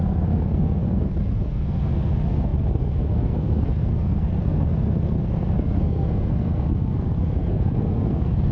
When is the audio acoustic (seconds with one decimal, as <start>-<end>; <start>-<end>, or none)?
none